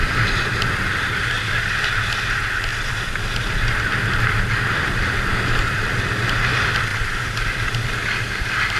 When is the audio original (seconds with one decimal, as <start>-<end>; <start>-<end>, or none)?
0.0-6.9; 7.4-8.8